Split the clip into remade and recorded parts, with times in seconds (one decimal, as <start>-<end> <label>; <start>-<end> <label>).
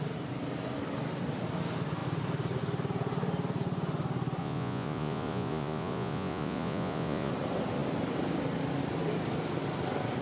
0.0-4.4 recorded; 4.4-7.3 remade; 7.3-10.2 recorded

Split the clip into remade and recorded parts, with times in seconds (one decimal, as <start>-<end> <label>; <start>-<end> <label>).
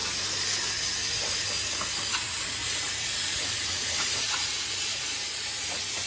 0.0-2.1 recorded; 2.1-6.1 remade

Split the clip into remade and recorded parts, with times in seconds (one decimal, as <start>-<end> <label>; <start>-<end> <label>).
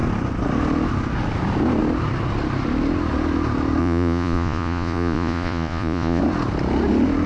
0.0-3.8 recorded; 3.8-6.2 remade; 6.2-7.3 recorded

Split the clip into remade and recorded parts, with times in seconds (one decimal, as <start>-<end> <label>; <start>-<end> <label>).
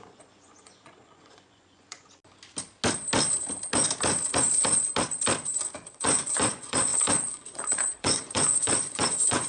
0.0-2.2 remade; 2.2-5.9 recorded; 5.9-9.5 remade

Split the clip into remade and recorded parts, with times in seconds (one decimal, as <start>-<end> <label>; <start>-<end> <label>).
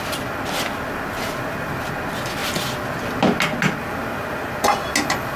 0.0-5.4 recorded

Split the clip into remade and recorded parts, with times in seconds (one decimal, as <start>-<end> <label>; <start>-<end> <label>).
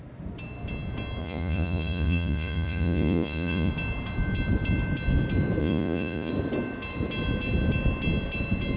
0.0-1.2 recorded; 1.2-3.7 remade; 3.7-5.6 recorded; 5.6-6.3 remade; 6.3-8.8 recorded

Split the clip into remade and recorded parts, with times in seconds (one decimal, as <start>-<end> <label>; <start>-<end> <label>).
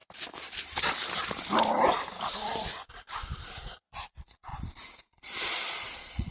0.0-3.6 recorded; 3.6-4.5 remade; 4.5-5.0 recorded; 5.0-6.3 remade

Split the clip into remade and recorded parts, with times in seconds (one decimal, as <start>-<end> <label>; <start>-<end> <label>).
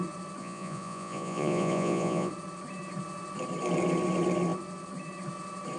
0.0-0.4 recorded; 0.4-2.3 remade; 2.3-5.8 recorded